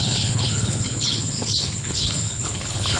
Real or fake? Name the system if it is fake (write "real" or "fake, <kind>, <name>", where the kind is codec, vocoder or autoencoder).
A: fake, codec, HILCodec